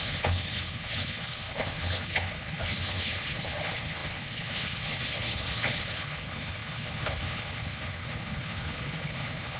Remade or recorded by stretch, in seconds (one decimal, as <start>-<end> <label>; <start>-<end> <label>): 0.0-9.6 remade